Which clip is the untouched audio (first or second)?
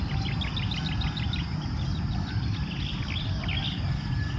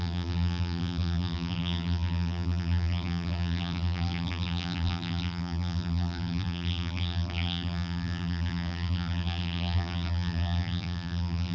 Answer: first